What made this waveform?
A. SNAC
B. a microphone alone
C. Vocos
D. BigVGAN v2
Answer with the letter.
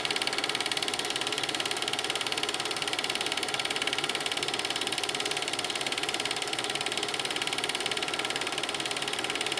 D